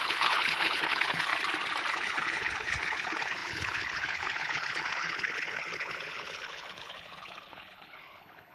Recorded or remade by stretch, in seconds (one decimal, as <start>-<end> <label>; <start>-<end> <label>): 0.0-1.3 remade; 1.3-1.9 recorded; 1.9-8.5 remade